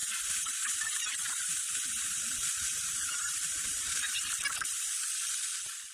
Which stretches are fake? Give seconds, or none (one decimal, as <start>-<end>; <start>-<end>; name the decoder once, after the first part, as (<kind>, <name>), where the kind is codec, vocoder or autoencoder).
0.0-2.2 (vocoder, BigVGAN v2); 2.6-4.8